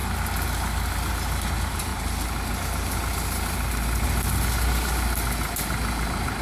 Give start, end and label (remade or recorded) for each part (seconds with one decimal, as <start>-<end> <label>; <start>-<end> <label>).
0.0-6.4 recorded